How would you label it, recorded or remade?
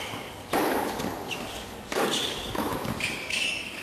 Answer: remade